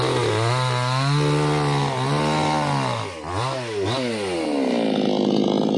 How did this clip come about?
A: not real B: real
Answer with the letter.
B